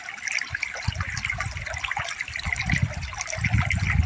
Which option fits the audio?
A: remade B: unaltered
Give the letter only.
B